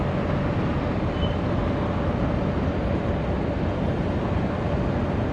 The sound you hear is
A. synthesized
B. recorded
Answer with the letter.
B